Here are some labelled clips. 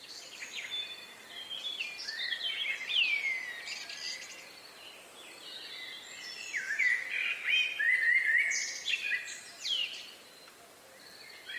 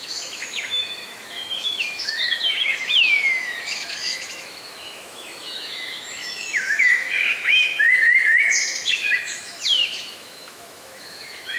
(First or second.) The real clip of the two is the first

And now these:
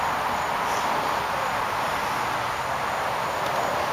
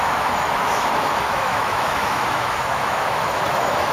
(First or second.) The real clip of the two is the first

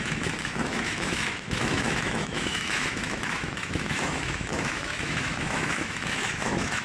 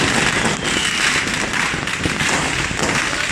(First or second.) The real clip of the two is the second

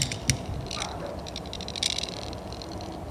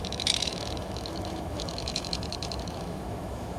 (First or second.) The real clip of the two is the first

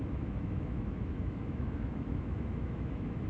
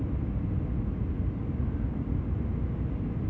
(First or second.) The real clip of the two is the second